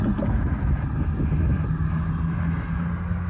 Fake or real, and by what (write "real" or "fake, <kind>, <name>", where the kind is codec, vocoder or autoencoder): real